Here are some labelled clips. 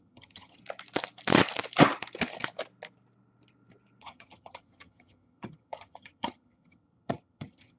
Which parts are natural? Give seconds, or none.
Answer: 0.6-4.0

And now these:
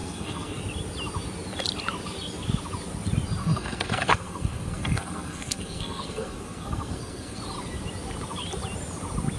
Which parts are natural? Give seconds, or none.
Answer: 0.6-3.4; 7.4-9.4

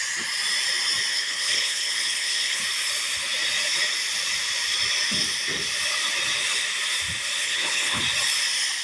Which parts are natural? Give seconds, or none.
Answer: 0.0-1.1; 2.6-7.4; 8.0-8.8

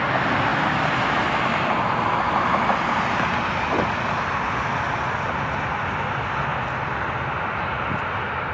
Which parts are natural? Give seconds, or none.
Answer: 0.0-8.5

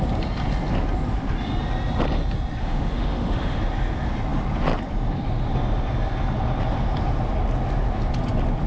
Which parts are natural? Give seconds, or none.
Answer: 0.0-2.6; 3.6-8.7

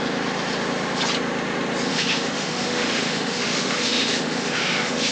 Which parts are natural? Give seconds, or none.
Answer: 0.0-1.9